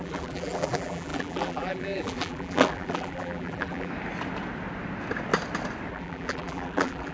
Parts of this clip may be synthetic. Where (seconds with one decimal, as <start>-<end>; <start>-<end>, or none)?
0.0-3.9; 5.9-7.1